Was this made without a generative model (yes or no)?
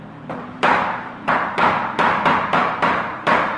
no